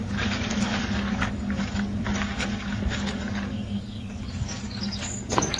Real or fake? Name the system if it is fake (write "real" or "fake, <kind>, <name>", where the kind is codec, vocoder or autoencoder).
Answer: fake, codec, DAC